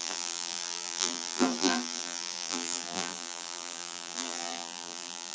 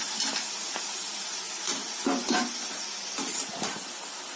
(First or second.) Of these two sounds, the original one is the second